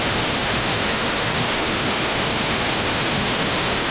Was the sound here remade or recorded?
remade